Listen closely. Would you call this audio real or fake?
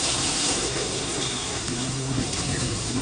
fake